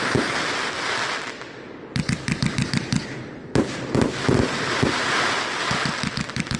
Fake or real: fake